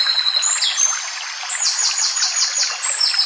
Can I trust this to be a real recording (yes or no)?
yes